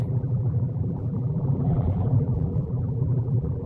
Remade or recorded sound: remade